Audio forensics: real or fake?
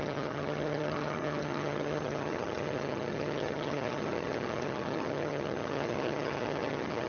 fake